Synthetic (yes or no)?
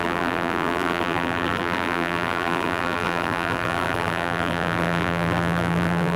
yes